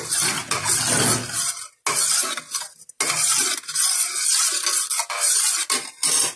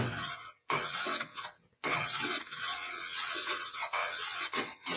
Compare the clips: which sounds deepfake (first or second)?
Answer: second